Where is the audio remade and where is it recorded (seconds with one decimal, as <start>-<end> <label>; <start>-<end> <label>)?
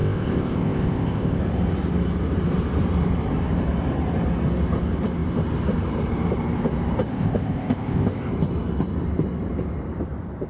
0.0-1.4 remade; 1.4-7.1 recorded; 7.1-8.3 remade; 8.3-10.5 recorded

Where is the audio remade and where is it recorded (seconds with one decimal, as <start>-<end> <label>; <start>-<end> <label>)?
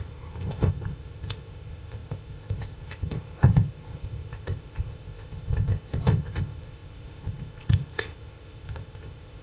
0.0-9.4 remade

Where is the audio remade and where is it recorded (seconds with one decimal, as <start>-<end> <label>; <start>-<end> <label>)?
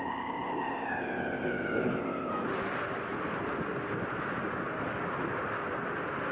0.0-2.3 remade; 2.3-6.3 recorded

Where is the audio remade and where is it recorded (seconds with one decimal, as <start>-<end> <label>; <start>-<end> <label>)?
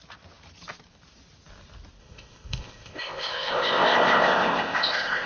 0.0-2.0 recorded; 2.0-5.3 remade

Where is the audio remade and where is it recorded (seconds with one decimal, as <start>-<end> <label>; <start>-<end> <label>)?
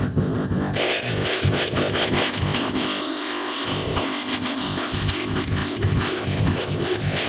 0.0-7.3 remade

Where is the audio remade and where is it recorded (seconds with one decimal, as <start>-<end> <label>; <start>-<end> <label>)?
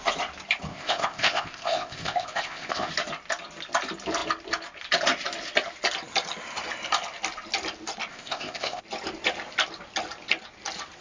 0.0-0.7 recorded; 0.7-2.9 remade; 2.9-8.1 recorded; 8.1-8.8 remade; 8.8-11.0 recorded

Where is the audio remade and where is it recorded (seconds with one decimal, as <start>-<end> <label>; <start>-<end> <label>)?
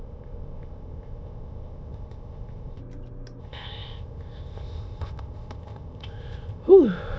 0.0-2.8 remade; 2.8-3.4 recorded; 3.4-7.2 remade